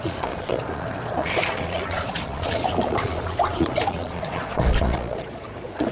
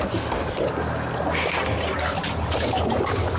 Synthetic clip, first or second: first